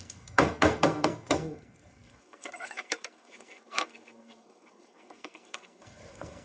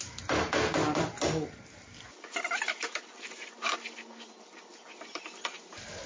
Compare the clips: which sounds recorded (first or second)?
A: second